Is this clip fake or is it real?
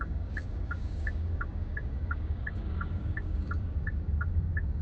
fake